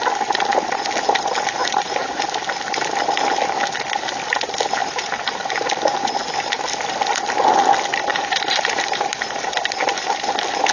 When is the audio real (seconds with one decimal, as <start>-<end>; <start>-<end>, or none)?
0.0-1.6; 2.2-4.8; 6.1-7.9; 9.5-10.7